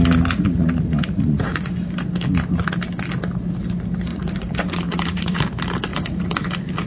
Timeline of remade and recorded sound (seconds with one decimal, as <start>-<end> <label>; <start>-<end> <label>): 0.0-0.9 recorded; 0.9-1.7 remade; 1.7-4.1 recorded; 4.1-5.4 remade; 5.4-5.9 recorded; 5.9-6.5 remade; 6.5-6.9 recorded